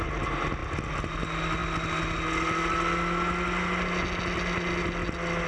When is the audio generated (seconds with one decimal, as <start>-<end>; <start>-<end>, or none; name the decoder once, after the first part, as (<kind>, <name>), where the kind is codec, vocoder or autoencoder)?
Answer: none